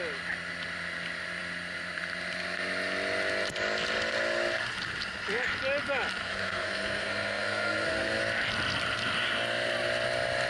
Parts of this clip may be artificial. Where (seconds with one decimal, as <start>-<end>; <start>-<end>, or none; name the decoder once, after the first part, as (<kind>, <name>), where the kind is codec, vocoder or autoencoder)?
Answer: 6.2-8.2 (codec, SNAC)